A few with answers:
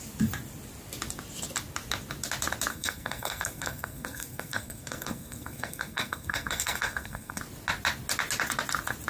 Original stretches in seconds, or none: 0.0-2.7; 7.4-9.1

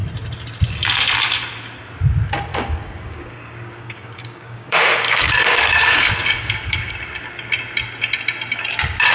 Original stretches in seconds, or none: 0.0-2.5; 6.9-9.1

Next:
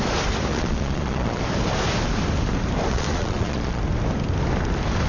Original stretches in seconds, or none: 0.0-0.5; 1.4-2.9; 3.8-5.1

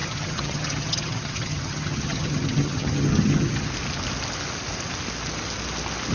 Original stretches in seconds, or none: 3.7-6.1

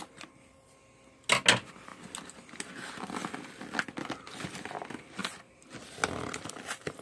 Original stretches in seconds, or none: 0.0-7.0

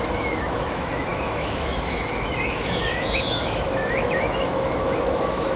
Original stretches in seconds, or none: none